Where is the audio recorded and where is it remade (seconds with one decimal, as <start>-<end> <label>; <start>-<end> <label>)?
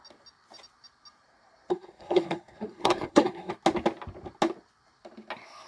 0.0-1.7 recorded; 1.7-3.5 remade; 3.5-5.7 recorded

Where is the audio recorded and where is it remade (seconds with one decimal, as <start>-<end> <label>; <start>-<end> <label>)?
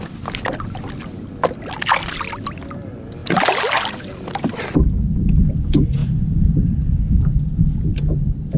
0.0-8.6 recorded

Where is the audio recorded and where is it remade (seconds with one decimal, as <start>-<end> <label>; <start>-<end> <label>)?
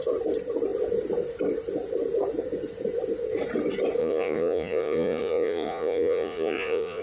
0.0-4.0 recorded; 4.0-7.0 remade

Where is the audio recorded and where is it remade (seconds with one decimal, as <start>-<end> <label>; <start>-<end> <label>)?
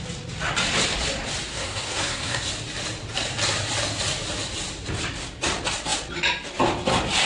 0.0-1.5 recorded; 1.5-2.5 remade; 2.5-7.3 recorded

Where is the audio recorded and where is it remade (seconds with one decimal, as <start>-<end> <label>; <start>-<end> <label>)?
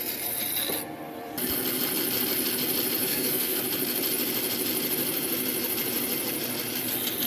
0.0-3.0 recorded; 3.0-3.6 remade; 3.6-7.3 recorded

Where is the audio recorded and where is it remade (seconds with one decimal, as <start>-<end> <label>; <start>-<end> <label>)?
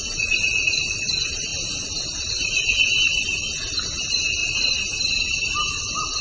0.0-4.4 recorded; 4.4-5.8 remade; 5.8-6.2 recorded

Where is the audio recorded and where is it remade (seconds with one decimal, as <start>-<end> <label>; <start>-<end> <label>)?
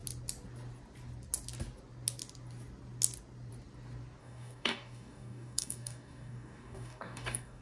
0.0-4.2 recorded; 4.2-7.6 remade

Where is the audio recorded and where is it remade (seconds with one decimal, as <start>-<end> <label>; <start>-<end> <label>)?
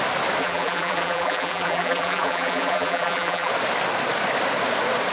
0.0-0.4 recorded; 0.4-3.5 remade; 3.5-5.1 recorded